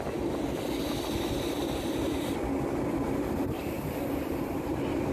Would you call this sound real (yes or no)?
yes